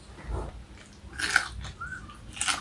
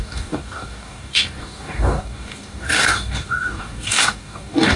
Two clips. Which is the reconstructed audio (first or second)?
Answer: second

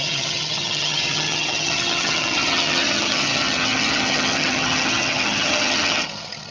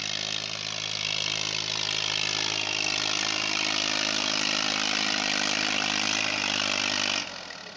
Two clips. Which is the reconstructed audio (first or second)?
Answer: first